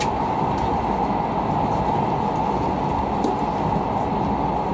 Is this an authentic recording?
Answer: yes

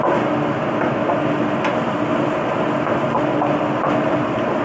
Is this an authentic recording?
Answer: yes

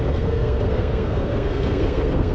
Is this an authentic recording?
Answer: no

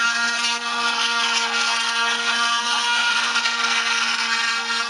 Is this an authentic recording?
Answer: no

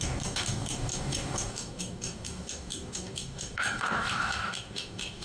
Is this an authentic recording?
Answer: no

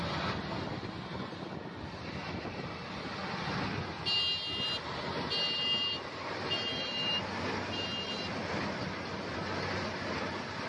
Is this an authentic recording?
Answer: yes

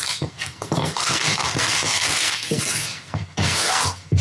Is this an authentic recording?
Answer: no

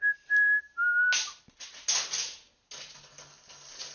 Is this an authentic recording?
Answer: yes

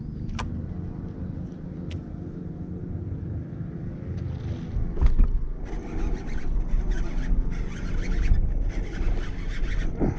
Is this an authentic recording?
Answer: yes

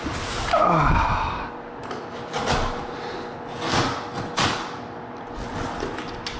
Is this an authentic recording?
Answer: yes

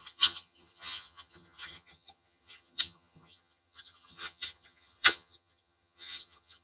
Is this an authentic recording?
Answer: no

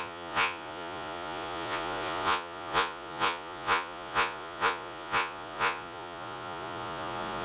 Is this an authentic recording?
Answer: no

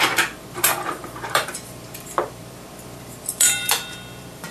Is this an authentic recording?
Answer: no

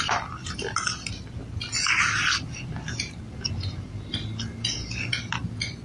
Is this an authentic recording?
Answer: yes